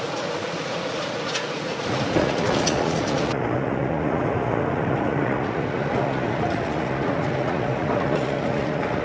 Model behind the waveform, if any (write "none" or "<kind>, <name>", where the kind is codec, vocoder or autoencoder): vocoder, Vocos